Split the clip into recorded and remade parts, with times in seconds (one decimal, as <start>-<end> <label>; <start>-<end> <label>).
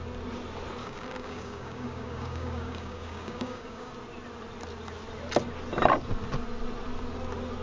0.0-0.8 recorded; 0.8-3.9 remade; 3.9-7.6 recorded